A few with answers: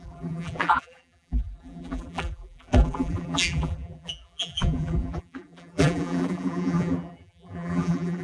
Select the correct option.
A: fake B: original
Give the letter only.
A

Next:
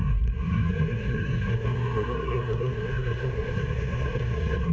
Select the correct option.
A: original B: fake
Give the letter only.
B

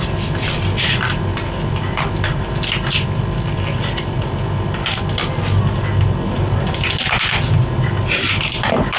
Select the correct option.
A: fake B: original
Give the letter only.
B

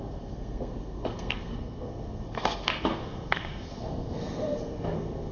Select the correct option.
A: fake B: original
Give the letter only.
A